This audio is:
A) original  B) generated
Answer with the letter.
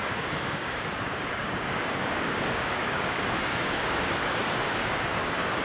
B